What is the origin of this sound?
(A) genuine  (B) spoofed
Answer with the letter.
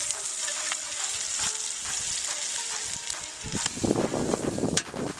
A